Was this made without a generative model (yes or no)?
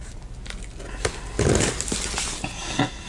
yes